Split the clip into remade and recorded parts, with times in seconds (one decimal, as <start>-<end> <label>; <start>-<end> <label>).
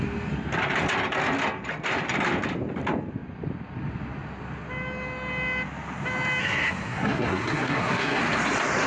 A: 0.0-6.4 recorded; 6.4-8.2 remade; 8.2-8.9 recorded